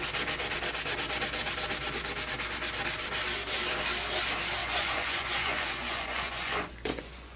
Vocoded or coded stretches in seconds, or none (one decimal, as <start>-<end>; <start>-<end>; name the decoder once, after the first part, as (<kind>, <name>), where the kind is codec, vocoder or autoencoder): 4.6-7.4 (vocoder, Vocos)